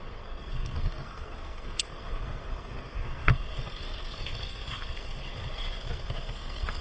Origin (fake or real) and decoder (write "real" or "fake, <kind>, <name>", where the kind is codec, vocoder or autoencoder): fake, codec, SNAC